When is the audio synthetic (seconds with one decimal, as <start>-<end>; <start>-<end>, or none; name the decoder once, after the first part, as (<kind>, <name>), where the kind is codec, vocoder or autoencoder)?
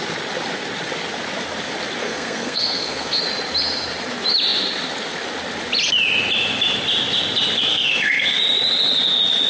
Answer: 2.0-3.2 (codec, SNAC); 7.7-8.4